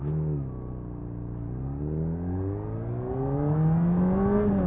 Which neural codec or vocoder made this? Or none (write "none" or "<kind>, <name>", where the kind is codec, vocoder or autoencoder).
none